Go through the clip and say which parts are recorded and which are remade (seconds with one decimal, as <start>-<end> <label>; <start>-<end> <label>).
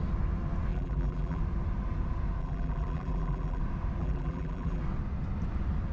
0.0-0.7 recorded; 0.7-1.4 remade; 1.4-2.4 recorded; 2.4-3.6 remade; 3.6-4.0 recorded; 4.0-4.8 remade; 4.8-5.9 recorded